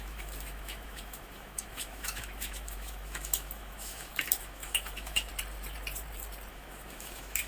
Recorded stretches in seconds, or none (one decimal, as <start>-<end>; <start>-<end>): 5.3-6.5